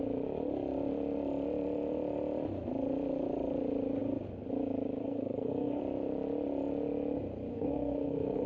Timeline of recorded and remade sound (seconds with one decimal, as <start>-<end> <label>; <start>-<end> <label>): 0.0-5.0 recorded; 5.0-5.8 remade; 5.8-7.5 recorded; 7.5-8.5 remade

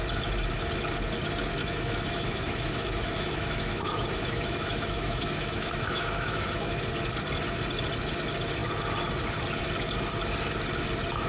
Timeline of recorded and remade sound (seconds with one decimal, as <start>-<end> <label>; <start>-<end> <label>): 0.0-1.6 recorded; 1.6-6.8 remade; 6.8-11.3 recorded

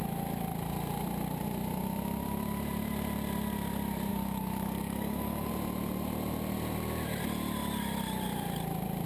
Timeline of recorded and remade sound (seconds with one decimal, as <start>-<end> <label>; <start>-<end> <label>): 0.0-4.1 recorded; 4.1-5.5 remade; 5.5-9.1 recorded